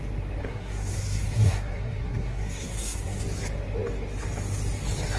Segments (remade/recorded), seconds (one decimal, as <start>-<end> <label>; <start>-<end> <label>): 0.0-0.4 recorded; 0.4-3.2 remade; 3.2-5.2 recorded